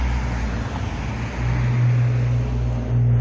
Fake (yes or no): no